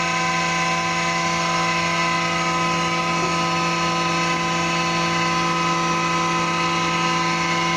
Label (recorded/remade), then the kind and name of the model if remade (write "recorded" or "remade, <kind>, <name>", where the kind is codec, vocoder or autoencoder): recorded